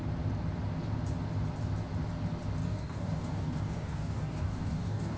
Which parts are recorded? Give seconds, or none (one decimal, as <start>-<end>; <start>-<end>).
0.0-2.6

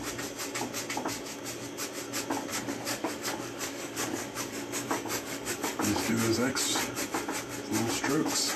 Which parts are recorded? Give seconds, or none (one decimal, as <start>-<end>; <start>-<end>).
0.0-2.5; 6.1-8.6

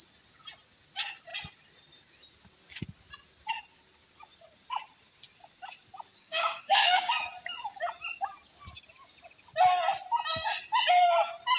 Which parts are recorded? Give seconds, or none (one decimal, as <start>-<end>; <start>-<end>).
0.0-6.2; 7.1-11.6

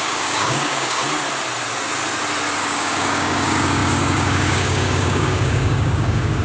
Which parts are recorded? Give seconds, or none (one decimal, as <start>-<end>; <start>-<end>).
1.0-2.6

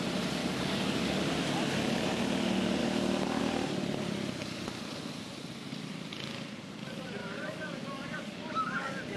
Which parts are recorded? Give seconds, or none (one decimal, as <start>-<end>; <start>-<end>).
0.0-0.4; 1.2-2.8; 3.4-7.2

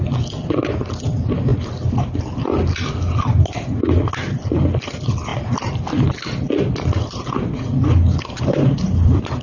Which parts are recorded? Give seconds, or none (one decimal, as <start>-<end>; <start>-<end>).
0.0-9.4

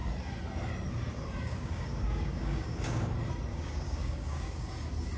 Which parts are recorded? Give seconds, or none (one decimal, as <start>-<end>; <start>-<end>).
0.0-1.5; 3.1-3.5; 4.7-5.2